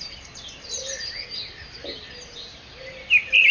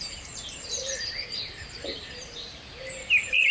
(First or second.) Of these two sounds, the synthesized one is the second